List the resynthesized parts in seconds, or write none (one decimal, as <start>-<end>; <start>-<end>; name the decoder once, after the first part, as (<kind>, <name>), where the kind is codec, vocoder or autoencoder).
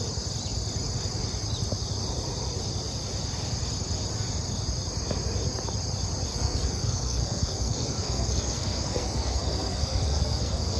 6.3-10.8 (codec, SNAC)